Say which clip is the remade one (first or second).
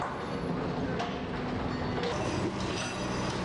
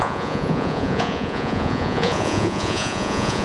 second